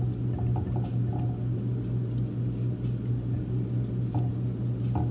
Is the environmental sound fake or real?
real